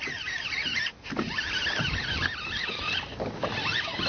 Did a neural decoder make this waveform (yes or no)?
no